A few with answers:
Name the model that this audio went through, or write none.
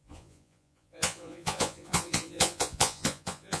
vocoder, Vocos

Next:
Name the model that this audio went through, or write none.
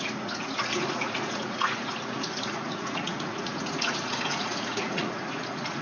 vocoder, Vocos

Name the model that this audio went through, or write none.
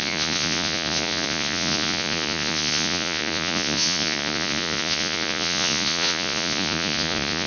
vocoder, Vocos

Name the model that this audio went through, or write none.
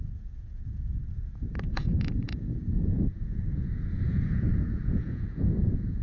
vocoder, Vocos